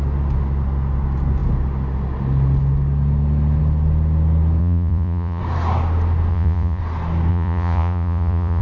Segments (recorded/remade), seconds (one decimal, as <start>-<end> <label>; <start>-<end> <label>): 0.0-4.6 recorded; 4.6-5.4 remade; 5.4-6.3 recorded; 6.3-6.8 remade; 6.8-7.3 recorded; 7.3-8.6 remade